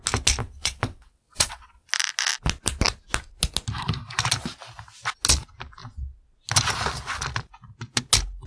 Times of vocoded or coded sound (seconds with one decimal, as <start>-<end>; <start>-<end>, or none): 0.4-1.9